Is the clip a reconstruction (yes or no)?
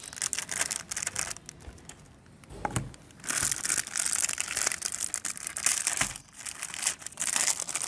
no